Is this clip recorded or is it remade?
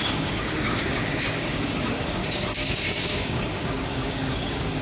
remade